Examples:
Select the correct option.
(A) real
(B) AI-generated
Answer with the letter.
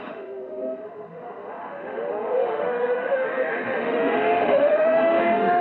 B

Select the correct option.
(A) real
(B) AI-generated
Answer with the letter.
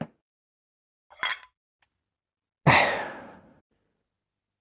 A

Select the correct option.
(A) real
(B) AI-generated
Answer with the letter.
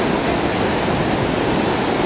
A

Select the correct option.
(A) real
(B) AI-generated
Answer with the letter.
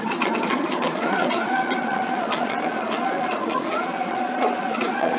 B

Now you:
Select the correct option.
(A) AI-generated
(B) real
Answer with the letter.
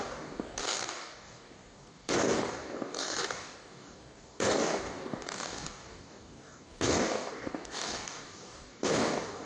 A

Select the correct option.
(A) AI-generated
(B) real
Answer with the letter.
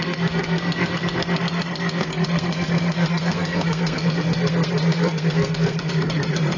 A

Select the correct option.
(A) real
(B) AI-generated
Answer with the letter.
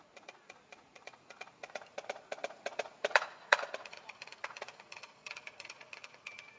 B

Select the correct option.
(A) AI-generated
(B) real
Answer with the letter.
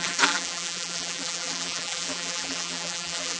A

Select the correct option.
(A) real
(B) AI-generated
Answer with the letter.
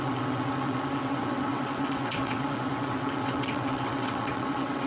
B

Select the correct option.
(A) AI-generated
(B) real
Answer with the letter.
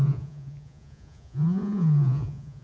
A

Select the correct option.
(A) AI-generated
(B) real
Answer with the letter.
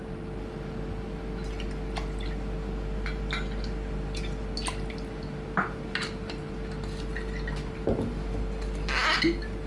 B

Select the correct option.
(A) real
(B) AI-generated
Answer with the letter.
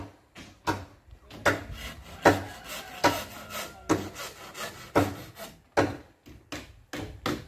A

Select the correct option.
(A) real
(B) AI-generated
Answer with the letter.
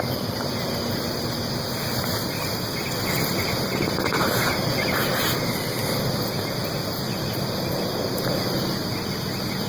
A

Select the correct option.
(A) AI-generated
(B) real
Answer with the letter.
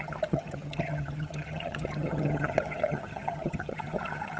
A